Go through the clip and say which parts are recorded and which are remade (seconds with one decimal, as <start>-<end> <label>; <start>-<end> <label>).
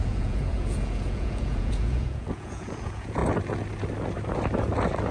0.0-3.2 remade; 3.2-5.1 recorded